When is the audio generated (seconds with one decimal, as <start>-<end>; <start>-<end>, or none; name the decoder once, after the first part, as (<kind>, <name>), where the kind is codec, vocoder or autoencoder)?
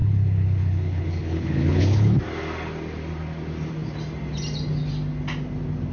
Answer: 0.0-2.2 (codec, HILCodec)